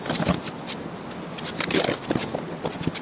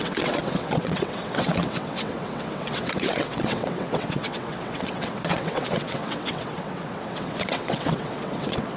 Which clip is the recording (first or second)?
first